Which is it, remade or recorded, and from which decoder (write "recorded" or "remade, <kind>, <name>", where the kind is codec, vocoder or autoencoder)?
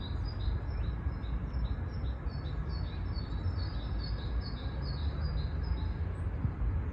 recorded